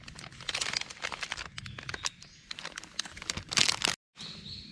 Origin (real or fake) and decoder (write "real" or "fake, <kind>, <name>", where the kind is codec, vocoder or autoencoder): real